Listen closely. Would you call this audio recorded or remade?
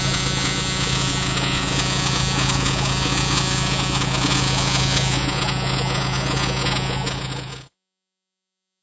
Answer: remade